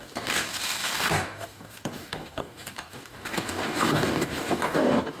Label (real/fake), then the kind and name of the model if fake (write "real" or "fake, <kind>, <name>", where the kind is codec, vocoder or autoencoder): fake, codec, DAC